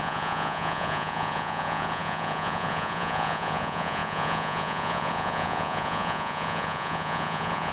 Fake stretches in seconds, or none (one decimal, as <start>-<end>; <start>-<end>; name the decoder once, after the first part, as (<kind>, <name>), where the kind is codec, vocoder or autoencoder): 0.0-7.7 (vocoder, Vocos)